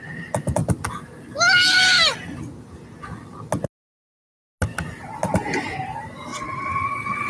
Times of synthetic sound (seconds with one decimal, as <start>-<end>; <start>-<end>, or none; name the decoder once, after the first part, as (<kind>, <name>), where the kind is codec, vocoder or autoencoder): 6.3-7.3 (vocoder, WaveNeXt)